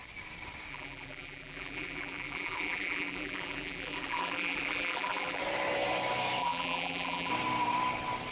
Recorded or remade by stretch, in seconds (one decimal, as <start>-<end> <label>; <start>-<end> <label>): 0.0-0.7 recorded; 0.7-5.4 remade; 5.4-6.4 recorded; 6.4-7.3 remade; 7.3-8.3 recorded